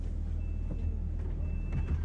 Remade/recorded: recorded